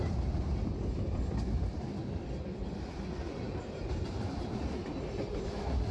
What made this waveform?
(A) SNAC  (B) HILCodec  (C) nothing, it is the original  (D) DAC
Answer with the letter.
C